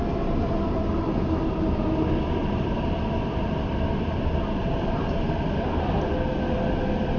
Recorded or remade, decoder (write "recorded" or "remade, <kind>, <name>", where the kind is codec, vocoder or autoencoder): recorded